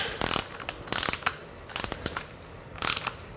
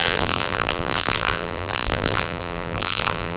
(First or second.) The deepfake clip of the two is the second